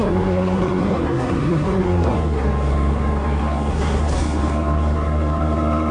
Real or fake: fake